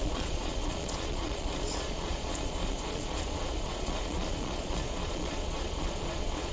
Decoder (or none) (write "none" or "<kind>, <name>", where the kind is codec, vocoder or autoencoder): vocoder, Vocos